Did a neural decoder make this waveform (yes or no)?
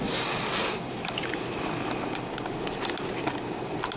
no